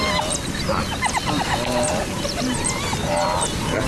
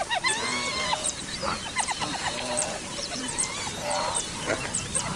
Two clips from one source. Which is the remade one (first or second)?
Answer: second